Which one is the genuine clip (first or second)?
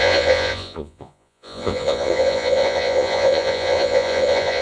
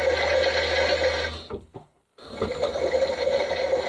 second